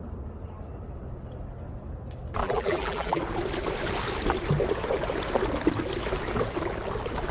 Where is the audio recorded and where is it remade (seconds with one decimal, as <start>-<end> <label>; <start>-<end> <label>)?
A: 0.0-2.4 recorded; 2.4-3.2 remade; 3.2-7.3 recorded